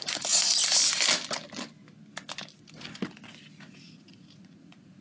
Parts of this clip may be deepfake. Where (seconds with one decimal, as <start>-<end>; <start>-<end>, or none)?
0.0-0.6; 3.6-5.0